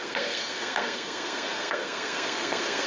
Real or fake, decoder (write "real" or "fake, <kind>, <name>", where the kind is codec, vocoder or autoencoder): fake, codec, SNAC